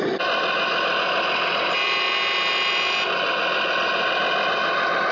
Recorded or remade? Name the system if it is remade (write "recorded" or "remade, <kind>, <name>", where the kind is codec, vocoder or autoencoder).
recorded